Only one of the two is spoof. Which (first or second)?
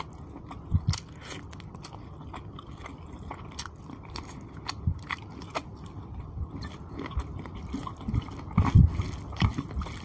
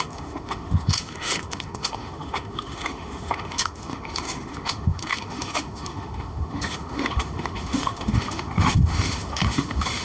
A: second